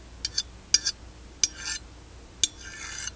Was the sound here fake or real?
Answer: real